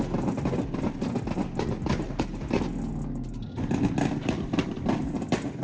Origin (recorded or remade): recorded